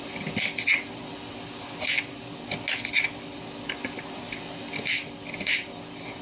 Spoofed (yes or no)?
no